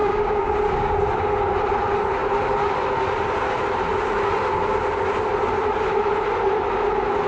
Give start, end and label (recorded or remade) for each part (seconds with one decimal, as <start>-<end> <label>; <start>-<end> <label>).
0.0-0.5 remade; 0.5-7.3 recorded